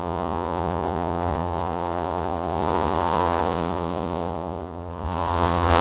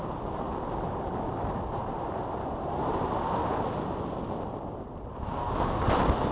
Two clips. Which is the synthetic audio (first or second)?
first